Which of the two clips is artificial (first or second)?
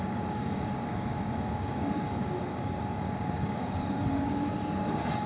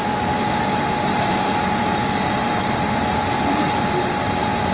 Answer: first